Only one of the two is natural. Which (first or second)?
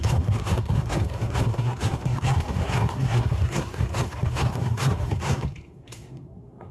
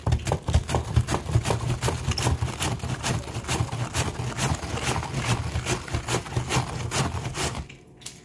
second